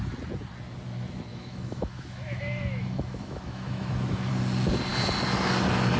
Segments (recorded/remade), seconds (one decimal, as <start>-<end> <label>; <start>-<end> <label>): 0.0-1.3 recorded; 1.3-4.3 remade; 4.3-6.0 recorded

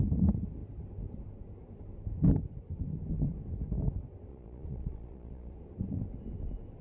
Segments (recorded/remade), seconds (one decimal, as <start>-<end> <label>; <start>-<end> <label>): 0.0-4.3 recorded; 4.3-5.5 remade; 5.5-6.8 recorded

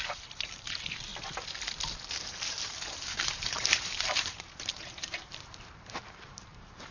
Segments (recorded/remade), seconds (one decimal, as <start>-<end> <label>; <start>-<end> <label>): 0.0-1.1 remade; 1.1-3.1 recorded; 3.1-6.9 remade

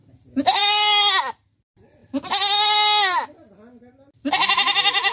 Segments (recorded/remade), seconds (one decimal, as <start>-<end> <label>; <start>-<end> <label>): 0.0-5.1 recorded

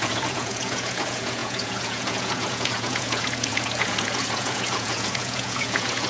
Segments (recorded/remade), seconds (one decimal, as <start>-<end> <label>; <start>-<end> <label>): 0.0-6.1 remade